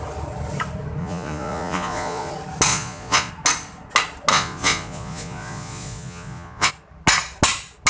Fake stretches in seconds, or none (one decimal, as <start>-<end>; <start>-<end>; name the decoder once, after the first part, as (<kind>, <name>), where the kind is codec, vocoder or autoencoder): 1.0-2.3 (vocoder, Vocos); 2.7-3.3; 4.3-6.7